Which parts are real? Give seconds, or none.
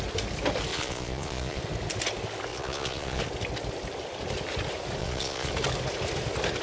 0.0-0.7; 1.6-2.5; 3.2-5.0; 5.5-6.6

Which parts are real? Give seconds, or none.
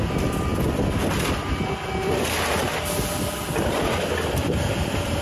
none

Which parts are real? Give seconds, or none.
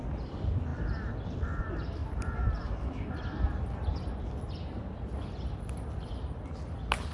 0.0-0.7; 1.6-2.0; 4.5-7.1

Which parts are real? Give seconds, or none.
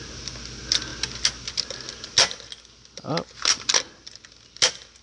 0.0-5.0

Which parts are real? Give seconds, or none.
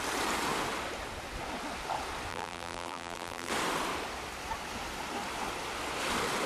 0.0-2.3; 3.5-6.5